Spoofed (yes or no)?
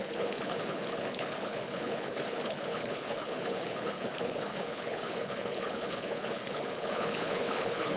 yes